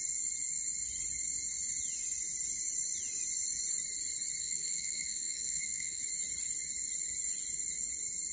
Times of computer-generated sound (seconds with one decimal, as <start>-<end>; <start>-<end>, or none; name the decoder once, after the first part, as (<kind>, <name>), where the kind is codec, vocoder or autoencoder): 4.4-6.0 (codec, SNAC)